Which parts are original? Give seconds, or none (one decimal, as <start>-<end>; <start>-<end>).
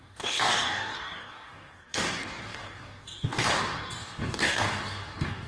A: none